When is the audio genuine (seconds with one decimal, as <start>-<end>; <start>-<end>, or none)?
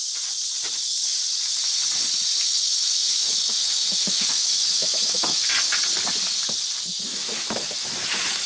0.0-2.5; 5.5-7.1